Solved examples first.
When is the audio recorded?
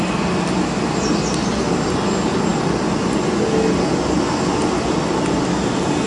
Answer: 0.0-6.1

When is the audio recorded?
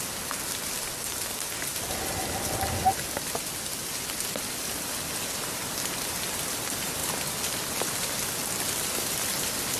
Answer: 0.0-3.7; 4.7-9.8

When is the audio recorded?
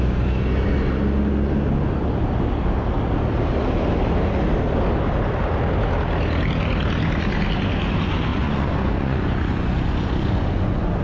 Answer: 0.0-8.3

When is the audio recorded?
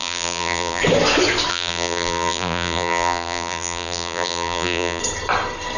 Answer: 0.8-1.5; 5.0-5.8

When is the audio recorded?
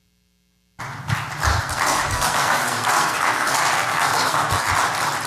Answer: 0.0-1.5; 4.7-5.3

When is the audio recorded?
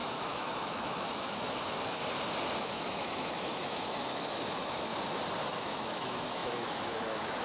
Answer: 2.0-2.6; 4.9-5.5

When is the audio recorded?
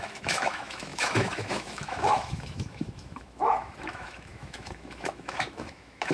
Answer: none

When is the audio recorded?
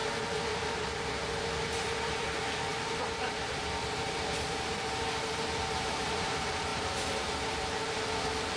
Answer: 0.0-1.6; 6.7-8.2